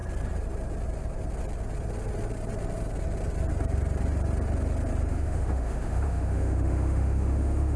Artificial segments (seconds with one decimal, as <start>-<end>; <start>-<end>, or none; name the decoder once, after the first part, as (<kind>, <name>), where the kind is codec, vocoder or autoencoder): 5.1-7.8 (autoencoder, DAC-VAE)